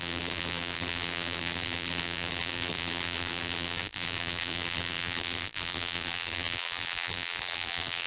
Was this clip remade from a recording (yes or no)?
yes